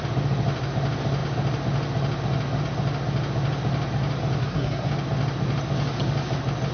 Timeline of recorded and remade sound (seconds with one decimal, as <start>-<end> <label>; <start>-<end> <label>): 0.0-4.4 recorded; 4.4-4.9 remade; 4.9-6.7 recorded

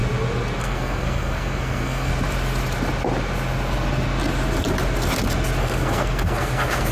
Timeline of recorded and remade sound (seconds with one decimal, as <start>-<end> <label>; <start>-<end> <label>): 0.0-0.6 recorded; 0.6-2.1 remade; 2.1-5.6 recorded; 5.6-6.9 remade

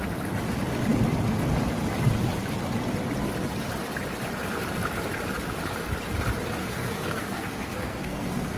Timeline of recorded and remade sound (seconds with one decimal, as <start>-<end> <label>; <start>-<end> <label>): 0.0-6.6 recorded; 6.6-8.6 remade

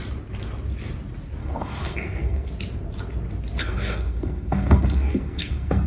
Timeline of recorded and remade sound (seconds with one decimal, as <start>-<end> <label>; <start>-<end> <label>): 0.0-1.4 recorded; 1.4-2.5 remade; 2.5-3.6 recorded; 3.6-5.9 remade

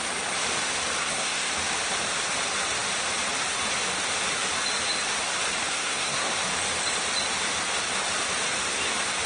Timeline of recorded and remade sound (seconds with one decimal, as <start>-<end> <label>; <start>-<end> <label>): 0.0-1.0 recorded; 1.0-1.5 remade; 1.5-5.7 recorded; 5.7-6.3 remade; 6.3-9.3 recorded